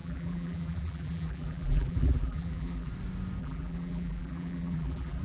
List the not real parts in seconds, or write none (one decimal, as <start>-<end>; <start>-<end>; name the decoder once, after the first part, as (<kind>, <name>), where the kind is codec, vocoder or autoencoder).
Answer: 0.0-2.9 (vocoder, BigVGAN v2); 3.4-5.2